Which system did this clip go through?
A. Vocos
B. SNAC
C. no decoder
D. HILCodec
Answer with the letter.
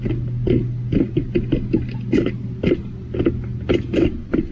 C